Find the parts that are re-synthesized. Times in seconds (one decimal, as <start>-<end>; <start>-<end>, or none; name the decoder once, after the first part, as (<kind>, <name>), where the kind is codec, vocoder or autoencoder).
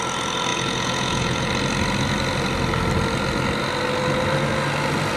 0.5-1.5 (vocoder, Vocos)